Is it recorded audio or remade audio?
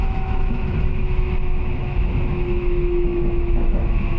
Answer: remade